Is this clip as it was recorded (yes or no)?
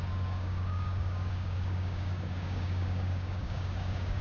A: no